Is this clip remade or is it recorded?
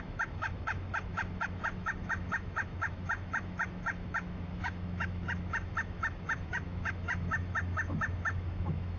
remade